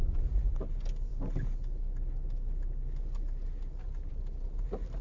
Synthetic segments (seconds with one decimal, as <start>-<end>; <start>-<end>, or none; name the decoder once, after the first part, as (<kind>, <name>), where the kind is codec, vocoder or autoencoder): none